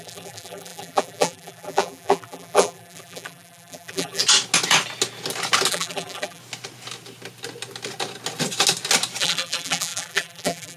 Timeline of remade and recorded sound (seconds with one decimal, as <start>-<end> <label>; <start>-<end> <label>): 0.0-4.2 remade; 4.2-5.7 recorded; 5.7-6.4 remade; 6.4-9.2 recorded; 9.2-10.8 remade